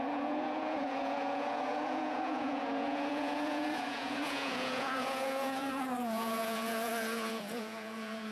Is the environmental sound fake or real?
fake